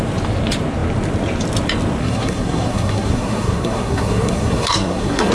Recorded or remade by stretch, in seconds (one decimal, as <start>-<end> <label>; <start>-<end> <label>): 0.0-2.0 recorded; 2.0-5.3 remade

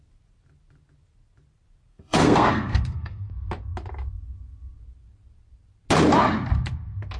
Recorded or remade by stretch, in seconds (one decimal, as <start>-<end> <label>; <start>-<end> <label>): 0.0-1.9 recorded; 1.9-3.3 remade; 3.3-7.2 recorded

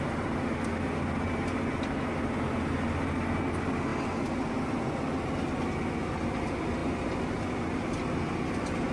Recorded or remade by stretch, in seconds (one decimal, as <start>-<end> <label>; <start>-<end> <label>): 0.0-8.9 recorded

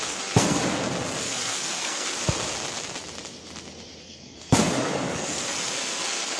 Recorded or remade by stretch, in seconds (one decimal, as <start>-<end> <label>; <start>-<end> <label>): 0.0-0.6 remade; 0.6-1.2 recorded; 1.2-2.2 remade; 2.2-4.0 recorded; 4.0-6.4 remade

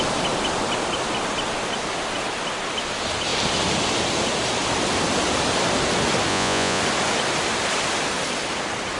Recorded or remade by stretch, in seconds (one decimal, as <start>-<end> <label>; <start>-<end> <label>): 0.0-6.3 recorded; 6.3-6.8 remade; 6.8-9.0 recorded

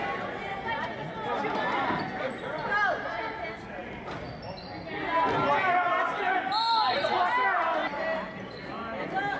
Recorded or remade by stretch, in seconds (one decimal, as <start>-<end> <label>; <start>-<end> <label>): 0.0-9.4 recorded

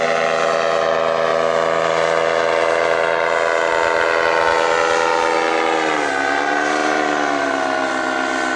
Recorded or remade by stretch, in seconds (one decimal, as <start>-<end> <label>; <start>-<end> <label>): 0.0-8.6 recorded

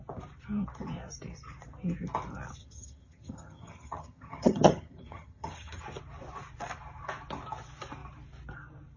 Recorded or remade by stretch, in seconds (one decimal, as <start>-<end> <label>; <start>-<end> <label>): 0.0-2.6 recorded; 2.6-5.8 remade; 5.8-9.0 recorded